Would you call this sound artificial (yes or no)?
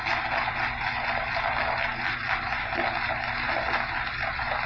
no